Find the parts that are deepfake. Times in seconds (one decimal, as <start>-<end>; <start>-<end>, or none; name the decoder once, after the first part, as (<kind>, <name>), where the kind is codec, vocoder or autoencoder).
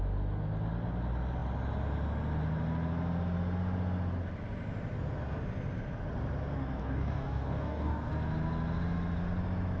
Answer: 6.8-8.1 (codec, DAC)